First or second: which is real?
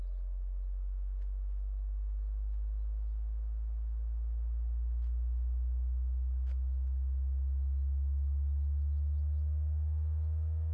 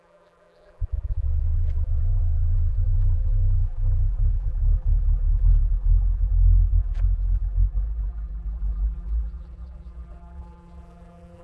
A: first